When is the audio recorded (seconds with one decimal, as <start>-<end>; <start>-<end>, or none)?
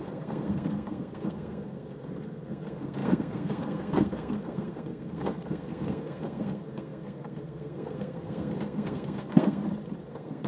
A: 9.6-10.1